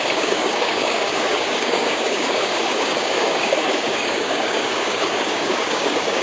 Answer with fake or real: fake